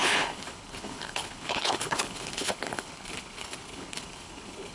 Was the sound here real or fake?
fake